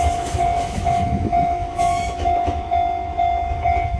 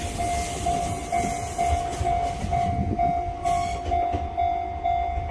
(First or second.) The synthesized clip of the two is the first